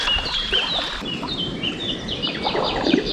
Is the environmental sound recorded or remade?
remade